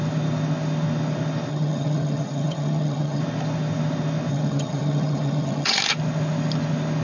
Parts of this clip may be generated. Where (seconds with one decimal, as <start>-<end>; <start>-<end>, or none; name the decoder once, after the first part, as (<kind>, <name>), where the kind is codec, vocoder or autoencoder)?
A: 1.5-3.2 (vocoder, HiFi-GAN); 4.3-5.8